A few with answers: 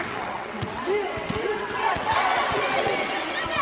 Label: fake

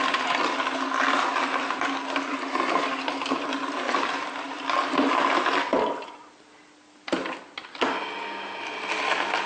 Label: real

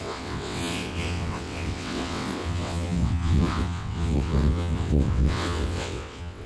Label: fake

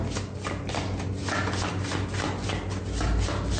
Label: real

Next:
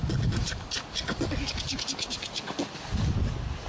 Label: real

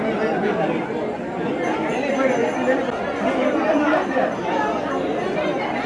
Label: real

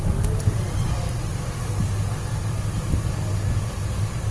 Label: real